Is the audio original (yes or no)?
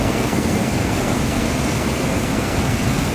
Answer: no